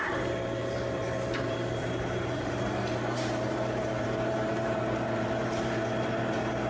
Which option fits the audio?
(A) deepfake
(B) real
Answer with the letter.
A